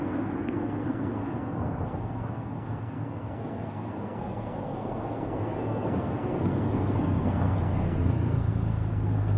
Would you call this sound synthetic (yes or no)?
yes